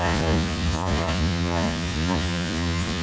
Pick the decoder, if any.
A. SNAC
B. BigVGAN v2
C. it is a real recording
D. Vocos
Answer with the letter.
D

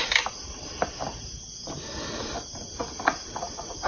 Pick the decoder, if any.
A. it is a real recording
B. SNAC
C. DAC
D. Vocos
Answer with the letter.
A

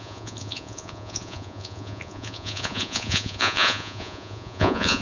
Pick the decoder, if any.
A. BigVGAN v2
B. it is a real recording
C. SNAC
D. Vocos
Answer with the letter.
D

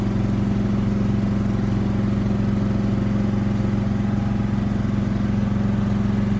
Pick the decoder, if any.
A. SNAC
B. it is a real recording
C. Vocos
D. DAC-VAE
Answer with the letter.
B